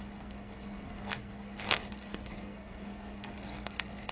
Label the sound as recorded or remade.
remade